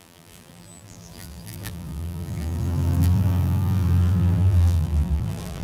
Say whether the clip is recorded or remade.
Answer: remade